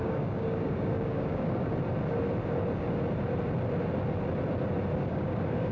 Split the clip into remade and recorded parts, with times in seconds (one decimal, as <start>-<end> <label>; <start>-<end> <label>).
0.0-1.7 remade; 1.7-5.1 recorded; 5.1-5.7 remade